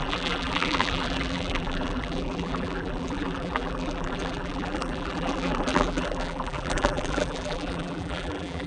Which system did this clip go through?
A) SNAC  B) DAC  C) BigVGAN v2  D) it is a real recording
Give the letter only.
C